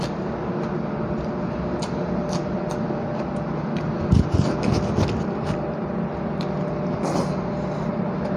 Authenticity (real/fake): real